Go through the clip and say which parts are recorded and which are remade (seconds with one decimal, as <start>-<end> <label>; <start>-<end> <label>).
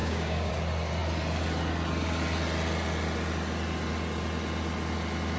0.0-0.5 remade; 0.5-5.4 recorded